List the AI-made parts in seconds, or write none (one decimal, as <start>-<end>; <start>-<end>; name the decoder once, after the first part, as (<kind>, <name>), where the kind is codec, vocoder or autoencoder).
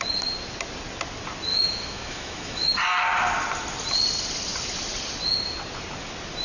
1.5-2.7 (autoencoder, DAC-VAE)